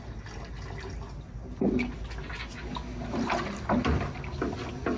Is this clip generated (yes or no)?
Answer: no